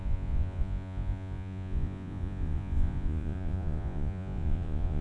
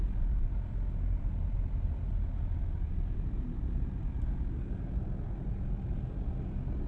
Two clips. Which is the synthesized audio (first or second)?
first